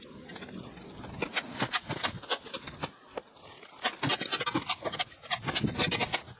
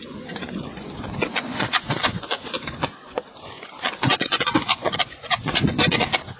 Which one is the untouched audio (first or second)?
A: first